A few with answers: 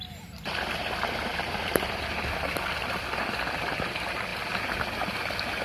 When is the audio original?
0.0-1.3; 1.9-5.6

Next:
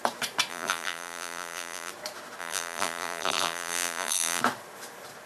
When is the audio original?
0.0-0.5; 1.9-2.4; 4.4-5.3